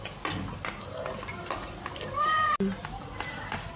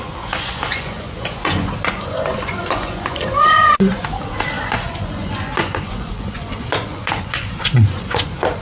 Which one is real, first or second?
first